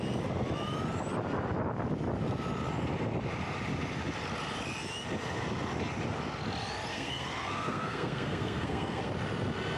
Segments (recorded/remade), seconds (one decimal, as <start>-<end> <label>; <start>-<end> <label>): 0.0-6.9 recorded; 6.9-9.1 remade; 9.1-9.8 recorded